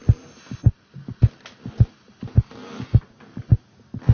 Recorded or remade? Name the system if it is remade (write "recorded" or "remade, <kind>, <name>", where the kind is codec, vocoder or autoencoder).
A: recorded